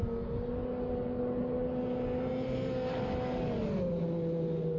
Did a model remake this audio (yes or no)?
no